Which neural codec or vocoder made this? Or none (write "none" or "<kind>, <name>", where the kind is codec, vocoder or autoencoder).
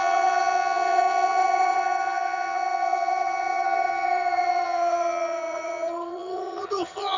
vocoder, HiFi-GAN